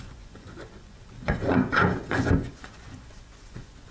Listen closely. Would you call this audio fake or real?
fake